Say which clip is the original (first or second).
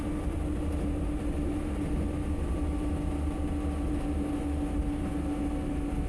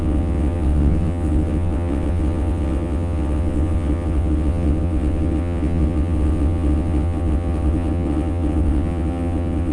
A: first